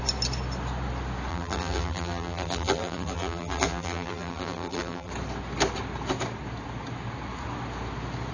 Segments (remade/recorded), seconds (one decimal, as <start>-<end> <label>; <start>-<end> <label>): 0.0-1.3 recorded; 1.3-5.1 remade; 5.1-8.3 recorded